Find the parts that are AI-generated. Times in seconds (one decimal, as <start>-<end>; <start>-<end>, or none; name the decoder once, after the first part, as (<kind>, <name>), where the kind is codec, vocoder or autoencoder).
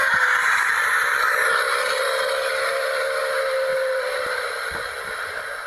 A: none